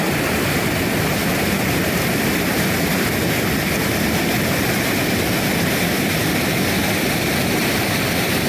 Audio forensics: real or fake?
real